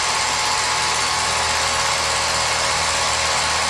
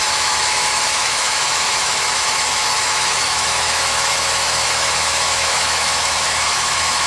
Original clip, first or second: first